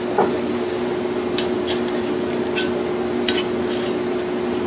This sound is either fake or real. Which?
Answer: real